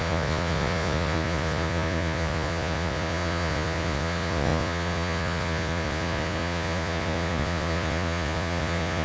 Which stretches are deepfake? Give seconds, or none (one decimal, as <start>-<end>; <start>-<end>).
0.0-9.0